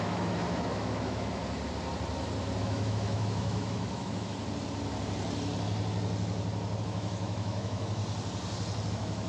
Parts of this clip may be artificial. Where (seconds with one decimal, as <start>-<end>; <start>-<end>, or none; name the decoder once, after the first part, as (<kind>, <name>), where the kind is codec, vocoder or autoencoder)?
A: 0.0-1.4 (autoencoder, DAC-VAE); 2.6-4.3; 6.8-8.0; 8.9-9.3